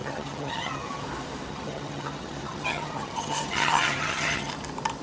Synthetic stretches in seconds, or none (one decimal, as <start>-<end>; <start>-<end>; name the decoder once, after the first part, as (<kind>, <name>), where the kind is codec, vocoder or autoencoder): 0.0-1.0 (vocoder, HiFi-GAN); 1.5-4.5